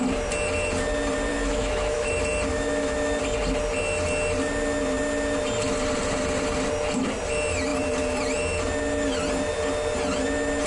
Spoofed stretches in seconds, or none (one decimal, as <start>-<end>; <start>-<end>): 1.3-2.1; 2.5-3.2